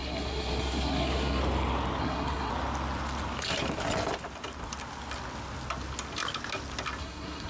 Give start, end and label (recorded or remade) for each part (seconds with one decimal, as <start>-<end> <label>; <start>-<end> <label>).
0.0-1.4 remade; 1.4-2.0 recorded; 2.0-2.5 remade; 2.5-7.0 recorded; 7.0-7.5 remade